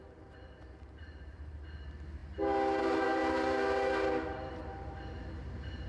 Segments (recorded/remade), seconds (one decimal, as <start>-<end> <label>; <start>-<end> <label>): 0.0-2.2 remade; 2.2-2.8 recorded; 2.8-3.2 remade; 3.2-4.5 recorded; 4.5-5.9 remade